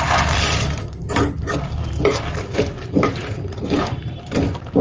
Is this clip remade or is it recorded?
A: remade